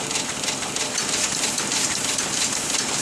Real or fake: real